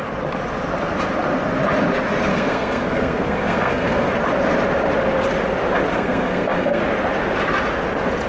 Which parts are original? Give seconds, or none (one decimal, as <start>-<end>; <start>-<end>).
0.0-2.3; 4.1-5.9; 6.8-8.3